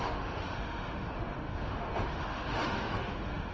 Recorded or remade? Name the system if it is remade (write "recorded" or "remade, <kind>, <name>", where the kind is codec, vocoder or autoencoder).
remade, autoencoder, DAC-VAE